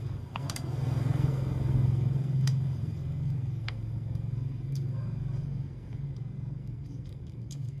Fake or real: fake